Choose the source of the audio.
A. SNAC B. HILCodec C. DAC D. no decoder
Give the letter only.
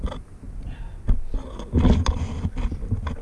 D